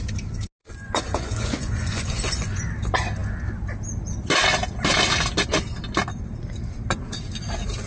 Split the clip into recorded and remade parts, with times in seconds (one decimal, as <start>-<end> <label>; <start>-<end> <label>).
0.0-0.6 recorded; 0.6-2.6 remade; 2.6-7.9 recorded